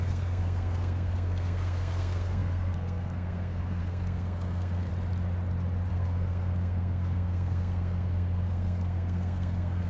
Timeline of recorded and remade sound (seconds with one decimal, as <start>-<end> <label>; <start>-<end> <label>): 0.0-4.9 remade; 4.9-5.9 recorded; 5.9-9.9 remade